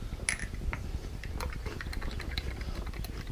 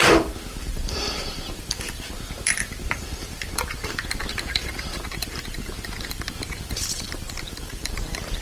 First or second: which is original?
first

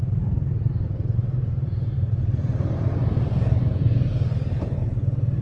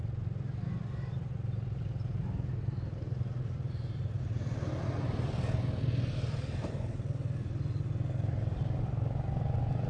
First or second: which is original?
second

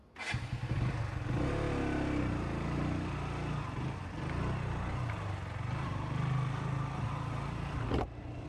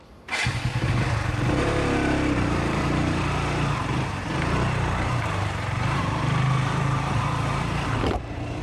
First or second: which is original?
first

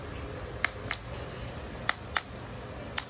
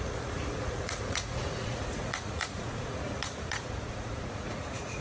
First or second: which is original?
first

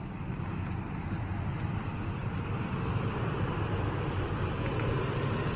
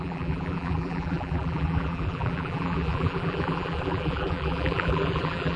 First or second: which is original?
first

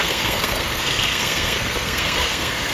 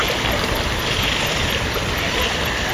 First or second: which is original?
second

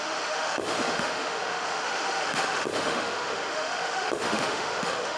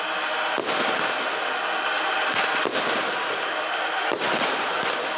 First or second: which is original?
second